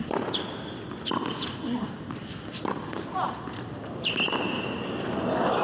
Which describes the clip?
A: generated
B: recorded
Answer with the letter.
B